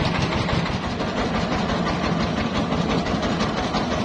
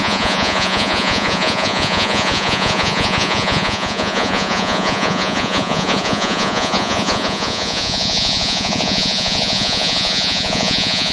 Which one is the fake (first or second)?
second